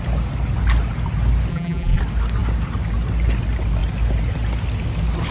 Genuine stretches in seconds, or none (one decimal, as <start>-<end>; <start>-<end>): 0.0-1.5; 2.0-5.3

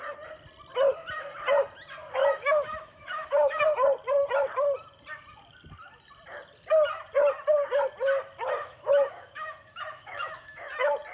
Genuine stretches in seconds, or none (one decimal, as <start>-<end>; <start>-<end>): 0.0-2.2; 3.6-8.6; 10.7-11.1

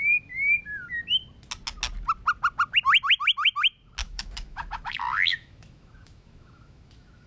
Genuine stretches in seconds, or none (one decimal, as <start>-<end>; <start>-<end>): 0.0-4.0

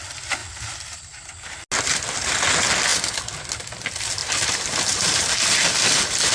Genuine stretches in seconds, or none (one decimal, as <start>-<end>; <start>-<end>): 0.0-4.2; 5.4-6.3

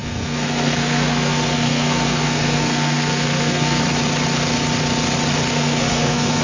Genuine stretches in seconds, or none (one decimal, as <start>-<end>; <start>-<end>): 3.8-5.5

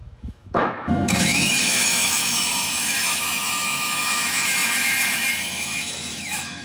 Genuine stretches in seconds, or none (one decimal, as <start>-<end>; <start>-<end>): none

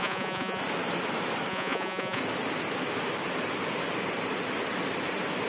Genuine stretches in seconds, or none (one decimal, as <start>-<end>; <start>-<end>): 0.6-1.5; 2.2-5.5

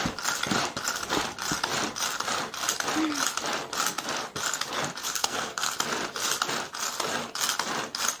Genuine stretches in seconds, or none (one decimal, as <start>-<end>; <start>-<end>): 0.0-5.0; 5.7-8.2